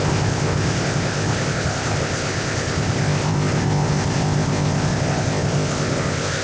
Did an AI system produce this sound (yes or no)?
yes